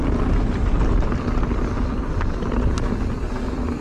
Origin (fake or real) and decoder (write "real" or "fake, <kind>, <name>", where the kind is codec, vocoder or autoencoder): real